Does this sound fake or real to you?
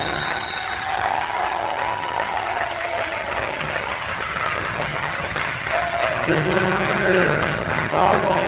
fake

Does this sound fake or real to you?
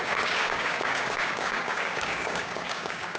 fake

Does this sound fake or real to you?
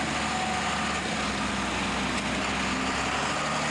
real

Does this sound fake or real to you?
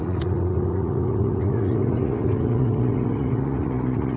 fake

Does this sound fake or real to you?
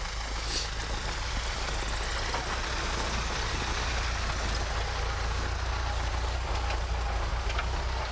real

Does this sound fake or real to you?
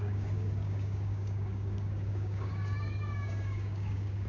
fake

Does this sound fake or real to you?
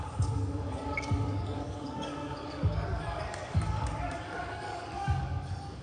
fake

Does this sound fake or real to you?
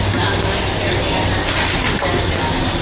real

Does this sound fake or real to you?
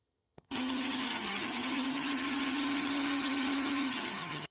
fake